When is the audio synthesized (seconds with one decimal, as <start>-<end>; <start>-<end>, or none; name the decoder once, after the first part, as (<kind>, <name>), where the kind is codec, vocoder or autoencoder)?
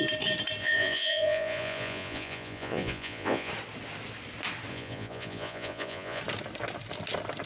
0.6-3.5 (vocoder, Vocos); 4.7-6.2